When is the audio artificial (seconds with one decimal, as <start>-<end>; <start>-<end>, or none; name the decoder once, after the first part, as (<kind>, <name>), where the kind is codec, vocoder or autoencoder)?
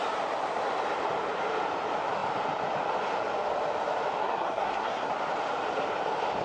4.2-5.1 (codec, SNAC)